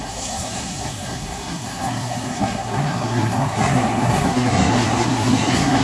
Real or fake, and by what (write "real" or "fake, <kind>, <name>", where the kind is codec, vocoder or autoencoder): fake, codec, SNAC